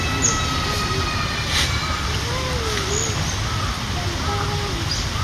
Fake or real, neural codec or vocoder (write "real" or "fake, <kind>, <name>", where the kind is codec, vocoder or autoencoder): real